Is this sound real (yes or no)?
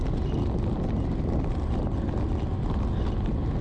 yes